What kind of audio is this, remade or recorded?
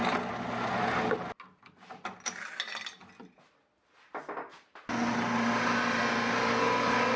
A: recorded